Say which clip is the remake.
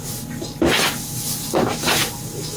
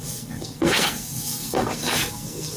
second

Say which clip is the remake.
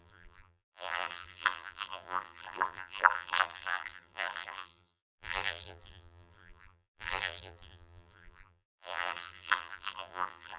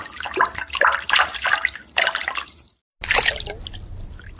first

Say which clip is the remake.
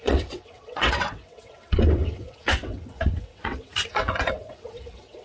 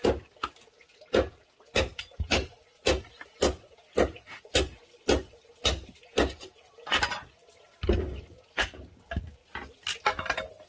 first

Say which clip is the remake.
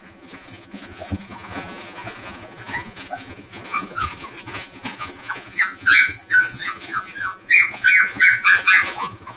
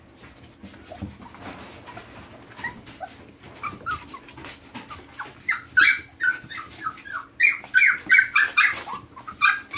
first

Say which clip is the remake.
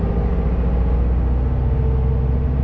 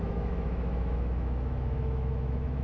second